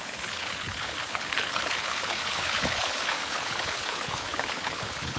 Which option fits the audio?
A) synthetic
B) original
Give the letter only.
A